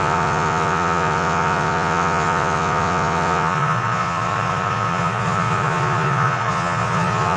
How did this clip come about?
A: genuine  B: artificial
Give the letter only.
B